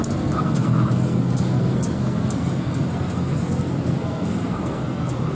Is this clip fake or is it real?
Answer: fake